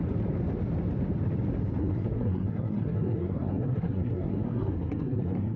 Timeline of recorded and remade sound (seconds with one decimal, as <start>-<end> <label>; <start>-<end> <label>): 0.0-1.8 recorded; 1.8-5.6 remade